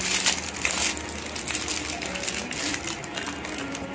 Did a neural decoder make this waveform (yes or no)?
no